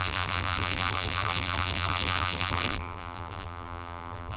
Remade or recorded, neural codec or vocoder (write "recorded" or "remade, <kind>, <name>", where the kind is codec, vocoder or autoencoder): remade, vocoder, BigVGAN v2